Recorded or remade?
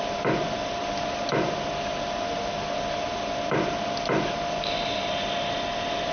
recorded